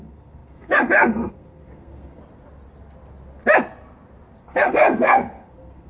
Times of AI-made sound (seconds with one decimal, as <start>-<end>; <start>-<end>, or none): 0.0-2.2; 4.4-5.9